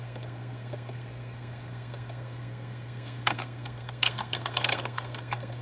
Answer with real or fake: fake